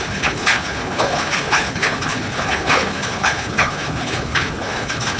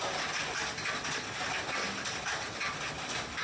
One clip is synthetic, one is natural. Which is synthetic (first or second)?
first